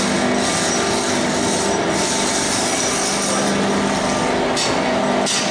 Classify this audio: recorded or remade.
recorded